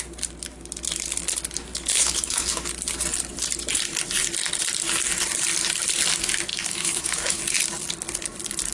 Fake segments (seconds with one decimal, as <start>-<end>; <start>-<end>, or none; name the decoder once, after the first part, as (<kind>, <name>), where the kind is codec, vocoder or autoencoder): 1.7-2.7 (autoencoder, DAC-VAE); 6.5-7.4